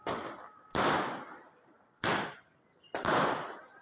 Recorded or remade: recorded